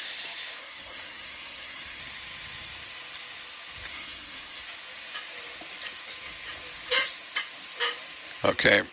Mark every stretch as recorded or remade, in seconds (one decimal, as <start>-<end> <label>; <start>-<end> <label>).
0.0-0.6 recorded; 0.6-2.0 remade; 2.0-3.9 recorded; 3.9-4.6 remade; 4.6-8.9 recorded